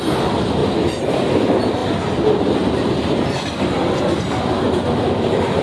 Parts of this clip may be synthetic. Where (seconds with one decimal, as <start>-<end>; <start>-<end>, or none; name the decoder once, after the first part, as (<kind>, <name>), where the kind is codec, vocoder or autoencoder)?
0.6-1.3 (vocoder, BigVGAN v2)